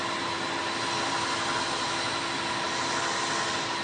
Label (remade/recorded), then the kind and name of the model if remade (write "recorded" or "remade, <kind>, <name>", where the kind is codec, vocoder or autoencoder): recorded